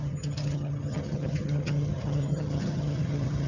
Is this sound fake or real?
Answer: fake